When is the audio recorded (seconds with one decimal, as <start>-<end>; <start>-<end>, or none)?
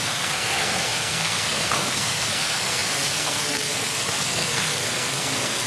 none